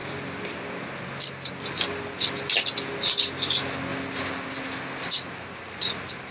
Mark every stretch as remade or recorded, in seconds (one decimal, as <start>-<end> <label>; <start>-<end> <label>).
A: 0.0-6.3 recorded